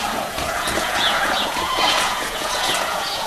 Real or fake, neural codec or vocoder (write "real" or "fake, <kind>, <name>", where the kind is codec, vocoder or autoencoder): fake, vocoder, Vocos